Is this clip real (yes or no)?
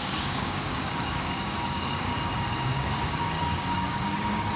no